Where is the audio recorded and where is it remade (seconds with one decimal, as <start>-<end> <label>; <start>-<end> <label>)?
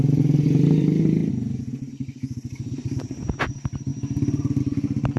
0.0-5.2 recorded